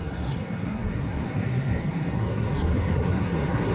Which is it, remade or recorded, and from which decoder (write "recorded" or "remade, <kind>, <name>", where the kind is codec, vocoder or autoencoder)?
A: remade, codec, SNAC